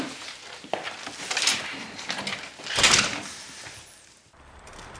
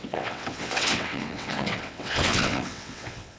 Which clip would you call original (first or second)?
first